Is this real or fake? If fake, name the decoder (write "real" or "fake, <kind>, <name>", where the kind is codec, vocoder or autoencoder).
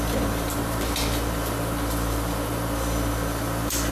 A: real